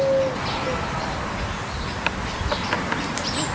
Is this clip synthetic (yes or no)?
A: no